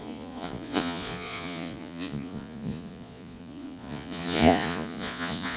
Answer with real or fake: fake